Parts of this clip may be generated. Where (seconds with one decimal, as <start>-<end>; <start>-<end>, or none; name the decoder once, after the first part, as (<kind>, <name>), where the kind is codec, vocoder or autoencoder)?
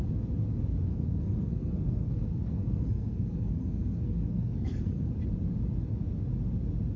0.9-5.1 (codec, SNAC)